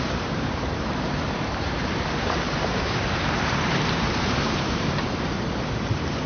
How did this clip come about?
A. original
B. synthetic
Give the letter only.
B